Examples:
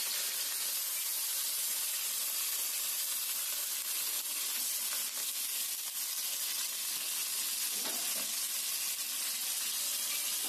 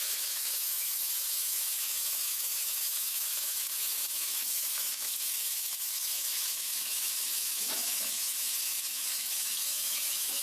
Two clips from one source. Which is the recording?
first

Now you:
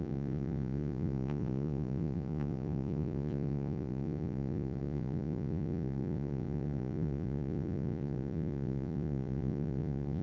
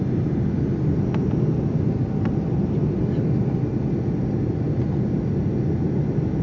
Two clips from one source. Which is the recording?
second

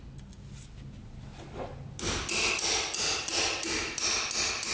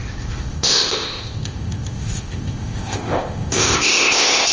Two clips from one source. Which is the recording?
first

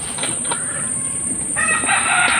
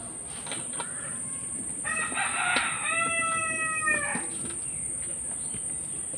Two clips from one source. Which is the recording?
second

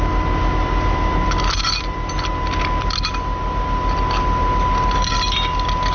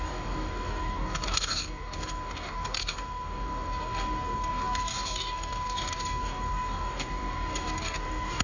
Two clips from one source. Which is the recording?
first